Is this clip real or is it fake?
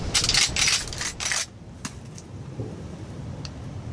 real